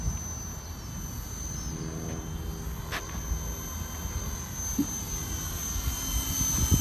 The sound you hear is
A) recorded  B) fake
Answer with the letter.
A